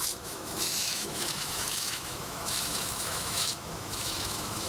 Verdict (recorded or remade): remade